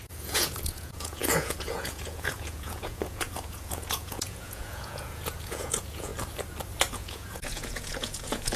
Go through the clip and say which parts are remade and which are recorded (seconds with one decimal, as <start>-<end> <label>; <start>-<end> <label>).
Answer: 0.0-6.1 remade; 6.1-6.9 recorded; 6.9-8.6 remade